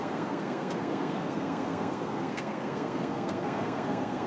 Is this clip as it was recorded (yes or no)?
no